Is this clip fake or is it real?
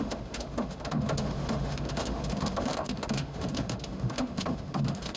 fake